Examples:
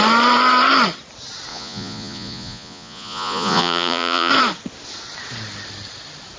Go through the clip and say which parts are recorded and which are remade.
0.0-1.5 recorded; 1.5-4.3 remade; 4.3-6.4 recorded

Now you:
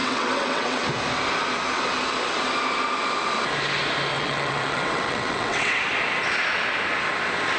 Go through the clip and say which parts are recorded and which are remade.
0.0-0.8 remade; 0.8-4.1 recorded; 4.1-5.8 remade; 5.8-7.6 recorded

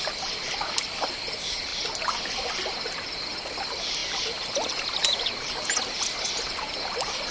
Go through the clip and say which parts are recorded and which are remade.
0.0-7.3 recorded

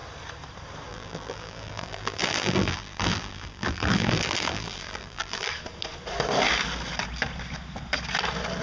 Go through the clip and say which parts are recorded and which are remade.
0.0-0.9 recorded; 0.9-5.5 remade; 5.5-8.6 recorded